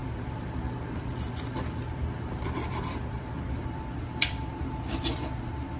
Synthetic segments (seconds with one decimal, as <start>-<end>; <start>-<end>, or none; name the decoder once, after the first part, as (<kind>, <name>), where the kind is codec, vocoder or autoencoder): 0.0-5.8 (vocoder, BigVGAN v2)